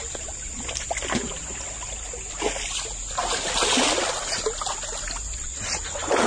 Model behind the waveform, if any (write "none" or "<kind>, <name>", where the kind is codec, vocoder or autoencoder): none